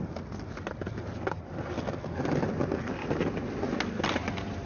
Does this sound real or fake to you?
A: real